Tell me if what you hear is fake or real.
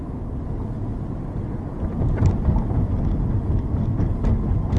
real